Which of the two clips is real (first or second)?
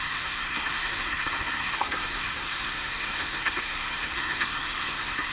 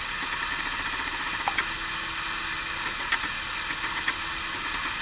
second